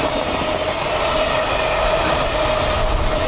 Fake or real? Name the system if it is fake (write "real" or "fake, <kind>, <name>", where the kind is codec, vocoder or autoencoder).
real